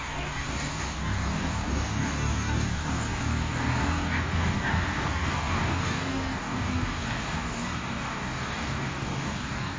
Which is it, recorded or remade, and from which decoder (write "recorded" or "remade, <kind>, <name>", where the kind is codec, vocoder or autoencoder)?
remade, codec, DAC